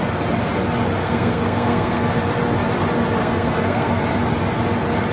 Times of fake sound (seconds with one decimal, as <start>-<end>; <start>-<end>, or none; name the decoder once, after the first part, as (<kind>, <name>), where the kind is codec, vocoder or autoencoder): 1.0-2.2 (codec, SNAC); 3.2-4.0